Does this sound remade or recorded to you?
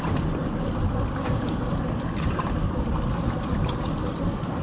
recorded